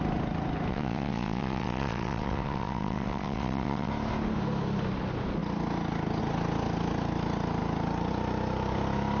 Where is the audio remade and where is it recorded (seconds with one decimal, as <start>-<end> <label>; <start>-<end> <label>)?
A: 0.0-0.7 recorded; 0.7-3.9 remade; 3.9-9.2 recorded